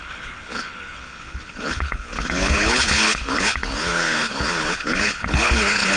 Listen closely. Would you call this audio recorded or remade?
remade